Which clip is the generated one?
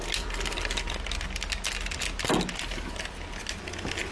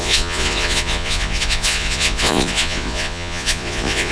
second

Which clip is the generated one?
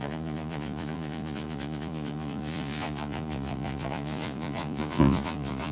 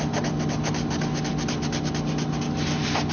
first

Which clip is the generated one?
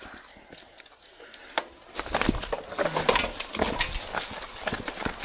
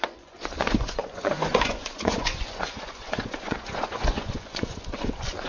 second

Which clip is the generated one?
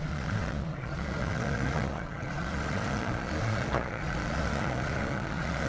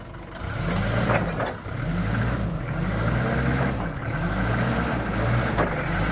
first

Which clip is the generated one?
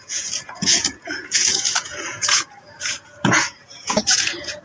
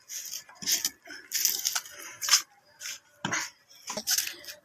first